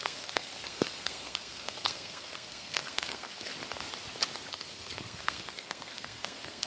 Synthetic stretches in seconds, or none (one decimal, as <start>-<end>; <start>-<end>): 0.0-3.5; 4.5-6.7